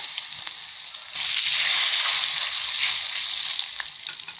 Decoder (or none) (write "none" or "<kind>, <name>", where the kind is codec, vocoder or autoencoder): none